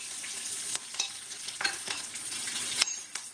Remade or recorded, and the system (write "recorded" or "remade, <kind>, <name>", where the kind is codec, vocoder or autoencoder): remade, vocoder, Vocos